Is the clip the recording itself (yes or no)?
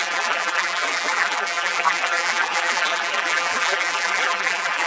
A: no